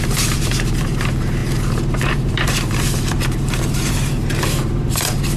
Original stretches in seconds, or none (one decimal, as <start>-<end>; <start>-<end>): none